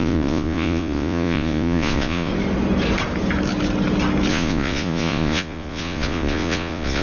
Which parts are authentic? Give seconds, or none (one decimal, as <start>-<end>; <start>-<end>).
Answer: 2.3-4.3